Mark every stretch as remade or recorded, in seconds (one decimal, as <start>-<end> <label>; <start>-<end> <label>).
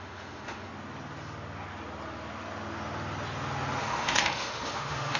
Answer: 0.0-0.7 remade; 0.7-3.8 recorded; 3.8-5.2 remade